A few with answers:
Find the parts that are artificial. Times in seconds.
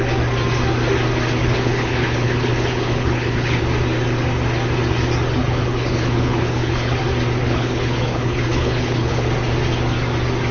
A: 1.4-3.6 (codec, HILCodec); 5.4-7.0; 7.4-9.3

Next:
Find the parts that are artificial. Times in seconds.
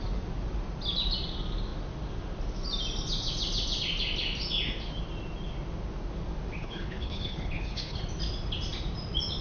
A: 6.6-8.0 (codec, HILCodec)